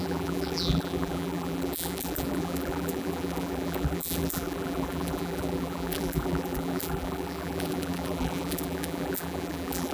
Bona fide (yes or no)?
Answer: no